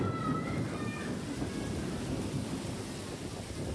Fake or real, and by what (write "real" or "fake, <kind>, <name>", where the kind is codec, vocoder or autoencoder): real